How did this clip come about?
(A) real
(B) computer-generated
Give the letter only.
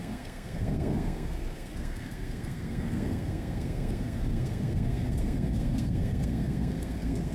B